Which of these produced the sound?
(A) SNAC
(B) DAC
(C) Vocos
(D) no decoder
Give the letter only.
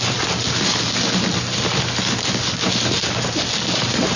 D